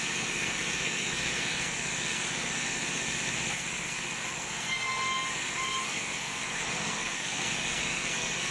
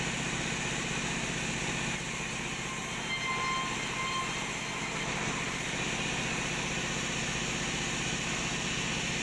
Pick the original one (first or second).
second